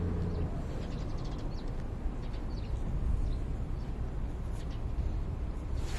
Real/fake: real